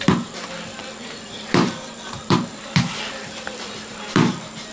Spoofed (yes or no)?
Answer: yes